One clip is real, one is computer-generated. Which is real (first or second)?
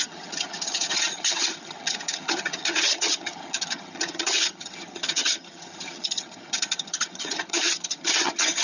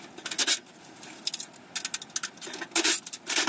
second